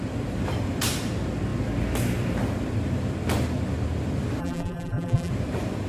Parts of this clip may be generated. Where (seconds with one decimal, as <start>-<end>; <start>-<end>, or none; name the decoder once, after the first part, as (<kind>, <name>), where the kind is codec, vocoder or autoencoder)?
4.4-5.3 (vocoder, BigVGAN v2)